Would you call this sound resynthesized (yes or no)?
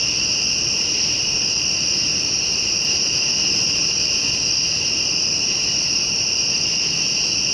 yes